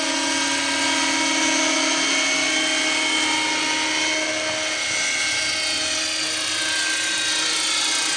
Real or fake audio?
real